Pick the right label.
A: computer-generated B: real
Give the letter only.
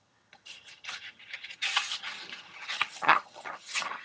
A